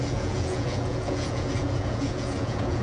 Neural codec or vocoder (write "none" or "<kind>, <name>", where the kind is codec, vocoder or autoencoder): vocoder, Vocos